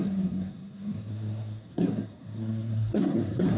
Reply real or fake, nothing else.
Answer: fake